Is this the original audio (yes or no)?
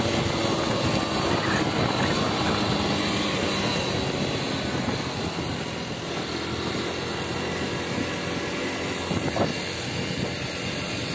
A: yes